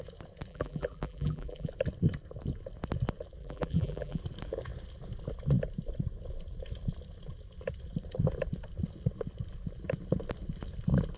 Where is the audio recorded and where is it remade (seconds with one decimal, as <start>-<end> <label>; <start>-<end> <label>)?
0.0-0.5 recorded; 0.5-1.7 remade; 1.7-3.4 recorded; 3.4-4.2 remade; 4.2-11.2 recorded